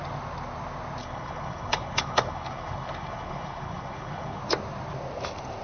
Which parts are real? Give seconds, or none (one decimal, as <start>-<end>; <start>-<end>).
0.0-1.0; 4.4-5.6